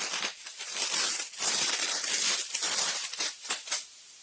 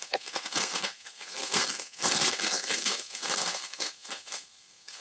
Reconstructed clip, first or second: second